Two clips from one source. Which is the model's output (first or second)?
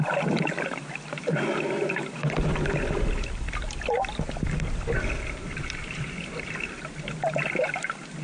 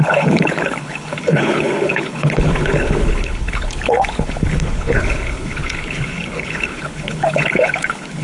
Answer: second